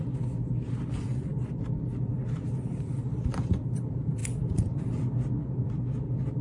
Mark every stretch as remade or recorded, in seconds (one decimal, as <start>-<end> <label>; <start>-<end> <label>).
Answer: 0.0-1.3 remade; 1.3-2.1 recorded; 2.1-6.4 remade